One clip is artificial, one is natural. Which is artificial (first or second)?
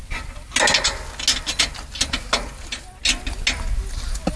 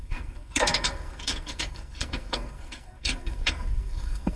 second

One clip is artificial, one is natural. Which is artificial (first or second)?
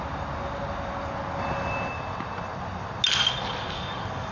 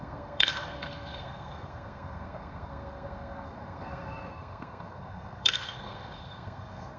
second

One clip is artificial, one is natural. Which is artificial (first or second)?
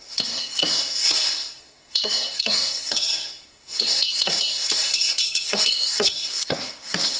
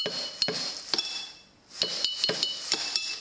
first